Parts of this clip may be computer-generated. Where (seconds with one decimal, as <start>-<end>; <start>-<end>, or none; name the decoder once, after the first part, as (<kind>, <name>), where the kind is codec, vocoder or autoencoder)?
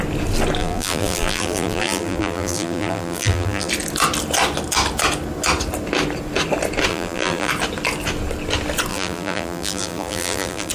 0.6-3.7 (vocoder, BigVGAN v2); 6.9-7.5; 8.9-10.7